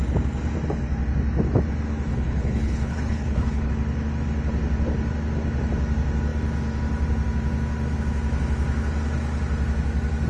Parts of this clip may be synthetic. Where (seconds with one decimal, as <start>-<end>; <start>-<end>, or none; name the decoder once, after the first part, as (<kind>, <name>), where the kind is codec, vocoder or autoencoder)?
2.1-3.7 (codec, HILCodec)